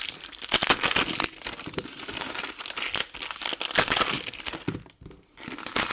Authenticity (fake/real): real